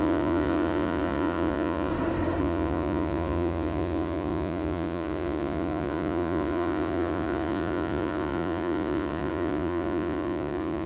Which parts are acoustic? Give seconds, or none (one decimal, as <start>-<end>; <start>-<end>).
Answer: 1.9-2.4